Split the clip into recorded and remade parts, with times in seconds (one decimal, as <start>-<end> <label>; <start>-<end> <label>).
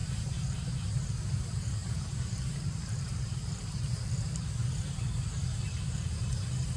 0.0-0.8 remade; 0.8-1.8 recorded; 1.8-4.4 remade; 4.4-6.8 recorded